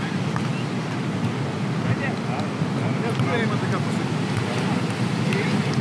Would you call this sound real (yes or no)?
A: yes